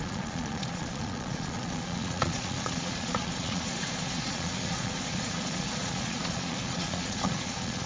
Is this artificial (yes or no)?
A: yes